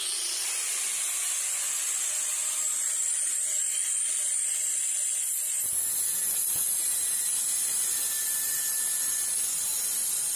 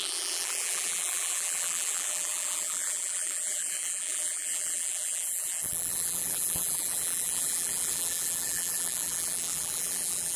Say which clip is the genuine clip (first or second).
first